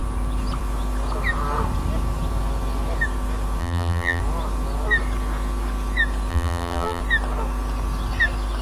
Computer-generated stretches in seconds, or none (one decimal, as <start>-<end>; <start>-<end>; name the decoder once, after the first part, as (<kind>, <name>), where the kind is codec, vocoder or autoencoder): 3.6-4.2 (vocoder, BigVGAN v2); 6.3-7.0